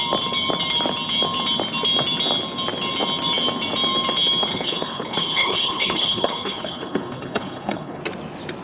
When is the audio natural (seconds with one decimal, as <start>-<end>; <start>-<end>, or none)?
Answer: 0.0-4.5; 8.0-8.6